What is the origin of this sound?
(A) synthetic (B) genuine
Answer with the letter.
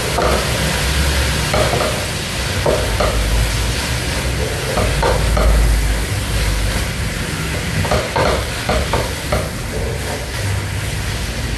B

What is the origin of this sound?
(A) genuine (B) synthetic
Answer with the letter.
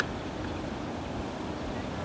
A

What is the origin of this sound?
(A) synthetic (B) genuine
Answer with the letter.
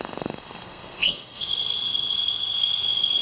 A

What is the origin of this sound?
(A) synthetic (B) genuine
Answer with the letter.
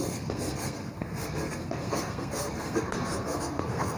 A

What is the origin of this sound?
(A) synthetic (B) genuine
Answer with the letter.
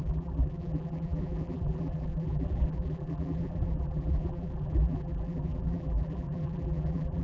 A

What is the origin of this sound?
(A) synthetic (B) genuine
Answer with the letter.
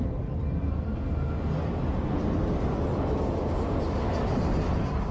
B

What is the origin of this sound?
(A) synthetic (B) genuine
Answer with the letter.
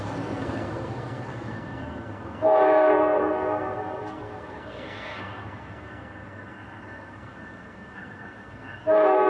A